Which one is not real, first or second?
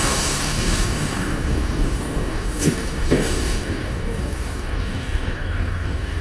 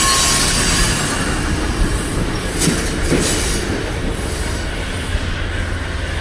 first